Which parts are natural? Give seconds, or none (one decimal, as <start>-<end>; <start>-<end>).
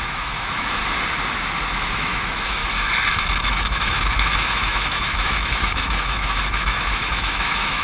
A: 0.8-1.9; 2.6-3.4